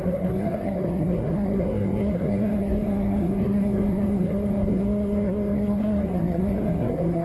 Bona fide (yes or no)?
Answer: no